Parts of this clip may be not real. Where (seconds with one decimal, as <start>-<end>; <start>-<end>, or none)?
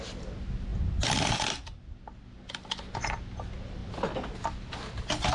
none